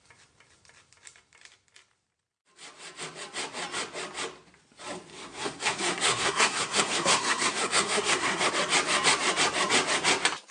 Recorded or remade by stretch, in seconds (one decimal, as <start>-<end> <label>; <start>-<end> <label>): 0.0-5.1 recorded; 5.1-8.5 remade; 8.5-10.5 recorded